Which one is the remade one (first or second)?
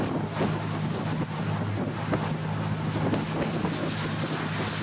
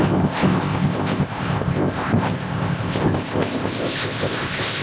second